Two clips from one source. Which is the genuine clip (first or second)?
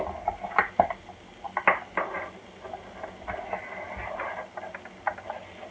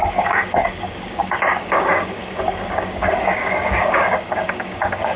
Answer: first